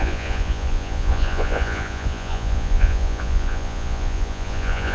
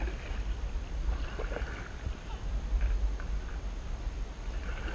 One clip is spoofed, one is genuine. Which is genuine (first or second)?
second